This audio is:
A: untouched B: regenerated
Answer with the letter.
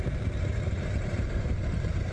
A